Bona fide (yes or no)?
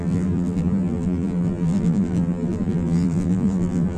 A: no